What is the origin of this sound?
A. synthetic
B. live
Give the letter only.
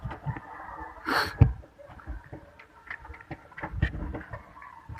B